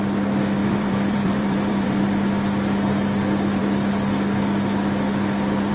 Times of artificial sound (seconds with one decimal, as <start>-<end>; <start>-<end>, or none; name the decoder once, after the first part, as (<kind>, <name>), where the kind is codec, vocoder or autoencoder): 0.6-2.0 (vocoder, BigVGAN v2)